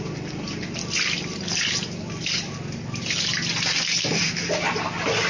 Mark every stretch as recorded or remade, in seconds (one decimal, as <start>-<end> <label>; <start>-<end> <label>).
0.0-5.3 recorded

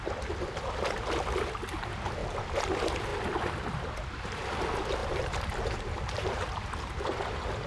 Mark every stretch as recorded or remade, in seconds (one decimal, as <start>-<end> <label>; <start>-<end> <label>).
0.0-2.2 recorded; 2.2-2.7 remade; 2.7-5.0 recorded; 5.0-6.9 remade; 6.9-7.7 recorded

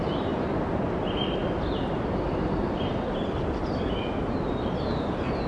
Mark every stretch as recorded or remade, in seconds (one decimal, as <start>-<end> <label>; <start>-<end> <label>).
0.0-5.5 recorded

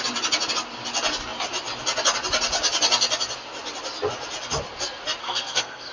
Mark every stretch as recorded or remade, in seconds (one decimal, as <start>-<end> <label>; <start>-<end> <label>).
0.0-5.2 recorded; 5.2-5.9 remade

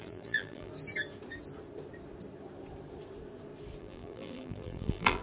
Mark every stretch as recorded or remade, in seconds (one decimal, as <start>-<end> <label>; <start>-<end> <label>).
0.0-0.7 remade; 0.7-3.8 recorded; 3.8-5.2 remade